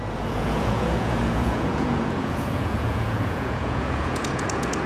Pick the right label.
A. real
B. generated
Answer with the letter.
B